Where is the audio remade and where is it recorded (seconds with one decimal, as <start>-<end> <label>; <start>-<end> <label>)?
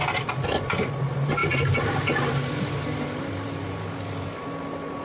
0.0-3.8 recorded; 3.8-4.4 remade; 4.4-5.0 recorded